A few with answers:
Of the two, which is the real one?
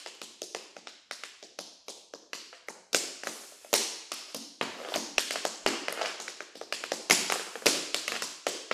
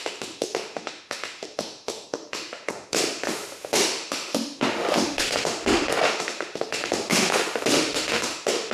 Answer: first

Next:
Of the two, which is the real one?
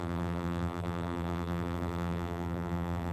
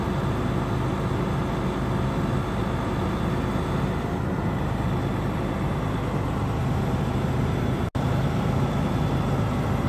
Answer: second